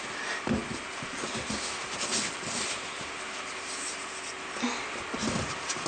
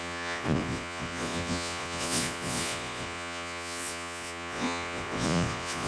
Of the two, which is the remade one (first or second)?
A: second